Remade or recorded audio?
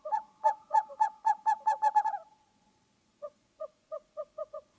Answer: remade